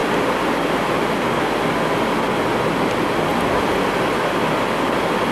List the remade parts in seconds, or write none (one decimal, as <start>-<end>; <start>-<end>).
0.0-1.1; 3.3-4.2

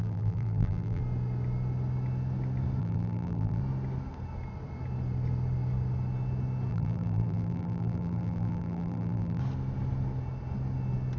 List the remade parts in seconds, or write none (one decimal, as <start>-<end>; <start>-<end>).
0.0-1.0; 2.8-3.6; 6.7-9.4